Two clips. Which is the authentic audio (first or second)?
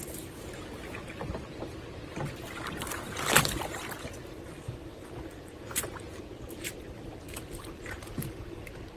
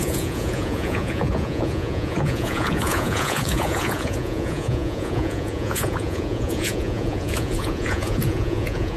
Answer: first